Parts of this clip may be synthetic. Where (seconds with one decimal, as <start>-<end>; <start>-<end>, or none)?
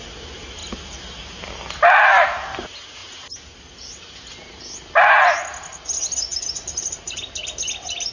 none